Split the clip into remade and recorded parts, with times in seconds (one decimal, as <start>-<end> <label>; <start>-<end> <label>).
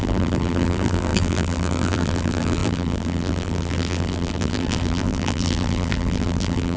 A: 0.0-6.8 remade